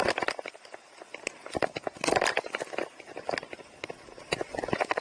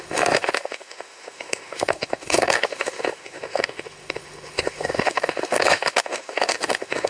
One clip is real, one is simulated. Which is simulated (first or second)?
second